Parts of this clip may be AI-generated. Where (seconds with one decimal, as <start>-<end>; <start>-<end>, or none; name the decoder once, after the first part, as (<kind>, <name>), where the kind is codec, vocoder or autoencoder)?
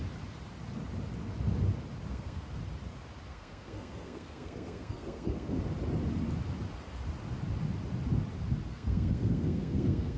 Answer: 2.1-2.6 (codec, SNAC); 3.3-5.6; 8.7-10.2